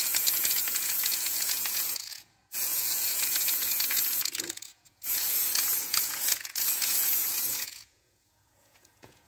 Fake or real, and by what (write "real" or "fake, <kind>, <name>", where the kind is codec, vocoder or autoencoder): fake, vocoder, Vocos